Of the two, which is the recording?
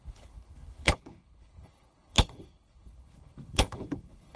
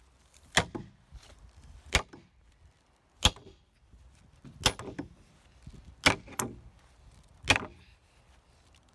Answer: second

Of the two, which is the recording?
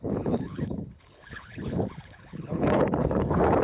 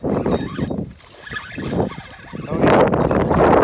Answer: second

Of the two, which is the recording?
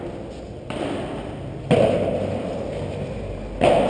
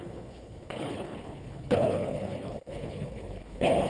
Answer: first